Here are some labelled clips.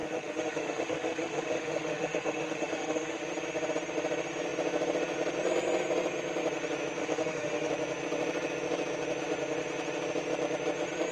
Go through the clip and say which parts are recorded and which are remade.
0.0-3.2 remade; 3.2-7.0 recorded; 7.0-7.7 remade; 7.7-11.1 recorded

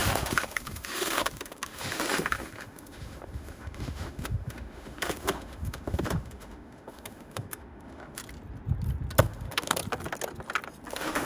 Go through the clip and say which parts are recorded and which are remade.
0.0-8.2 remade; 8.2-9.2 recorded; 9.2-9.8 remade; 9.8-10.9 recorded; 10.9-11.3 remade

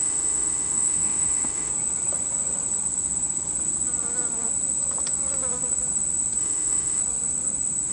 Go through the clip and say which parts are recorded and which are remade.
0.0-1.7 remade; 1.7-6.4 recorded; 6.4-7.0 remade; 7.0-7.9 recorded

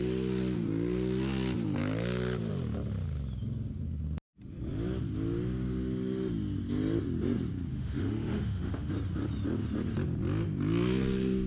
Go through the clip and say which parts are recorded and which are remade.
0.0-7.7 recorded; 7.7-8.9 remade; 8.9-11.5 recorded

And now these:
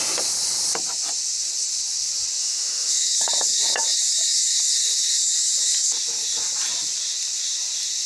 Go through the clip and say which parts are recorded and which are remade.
0.0-2.4 recorded; 2.4-3.0 remade; 3.0-8.1 recorded

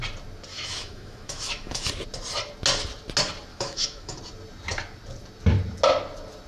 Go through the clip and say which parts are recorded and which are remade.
0.0-0.5 recorded; 0.5-1.9 remade; 1.9-3.5 recorded; 3.5-4.2 remade; 4.2-6.5 recorded

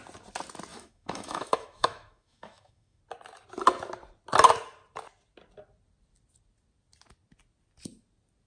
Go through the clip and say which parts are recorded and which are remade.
0.0-0.7 recorded; 0.7-3.0 remade; 3.0-8.5 recorded